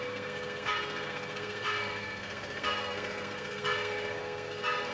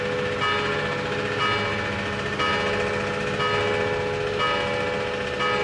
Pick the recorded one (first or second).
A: second